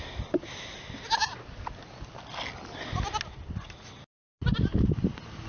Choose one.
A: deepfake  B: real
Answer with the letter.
B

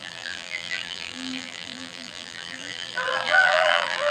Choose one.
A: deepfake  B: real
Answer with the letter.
A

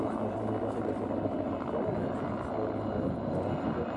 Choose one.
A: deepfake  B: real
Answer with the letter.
B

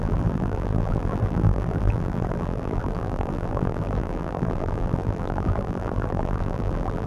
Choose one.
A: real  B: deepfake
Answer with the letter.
B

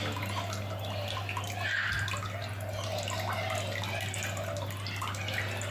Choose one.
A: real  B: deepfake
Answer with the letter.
A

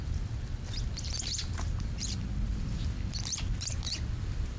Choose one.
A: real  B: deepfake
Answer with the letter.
B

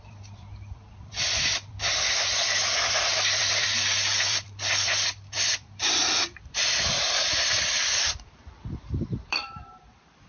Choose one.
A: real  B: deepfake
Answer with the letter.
B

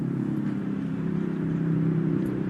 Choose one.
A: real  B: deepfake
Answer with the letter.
B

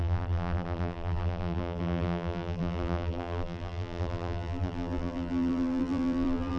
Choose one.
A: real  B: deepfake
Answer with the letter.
B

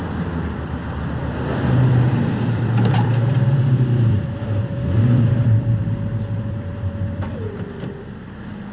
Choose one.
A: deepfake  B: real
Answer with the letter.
A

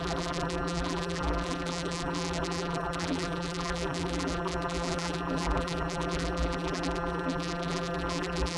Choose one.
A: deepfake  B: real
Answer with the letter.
A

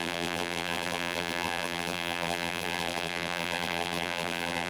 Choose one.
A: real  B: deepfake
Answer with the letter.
B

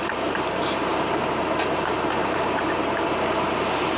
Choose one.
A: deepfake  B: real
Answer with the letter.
A